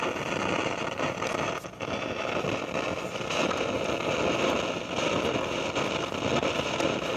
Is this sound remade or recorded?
recorded